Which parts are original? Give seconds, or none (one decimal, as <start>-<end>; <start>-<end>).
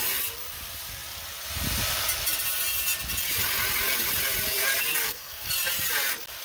0.0-5.0; 5.5-6.4